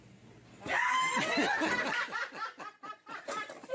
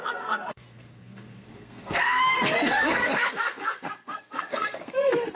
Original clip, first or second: first